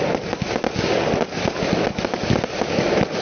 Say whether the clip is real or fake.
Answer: real